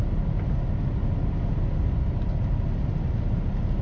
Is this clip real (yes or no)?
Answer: yes